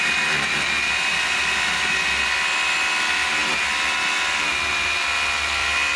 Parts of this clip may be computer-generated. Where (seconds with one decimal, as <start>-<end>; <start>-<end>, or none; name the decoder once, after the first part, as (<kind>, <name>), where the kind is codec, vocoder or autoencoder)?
none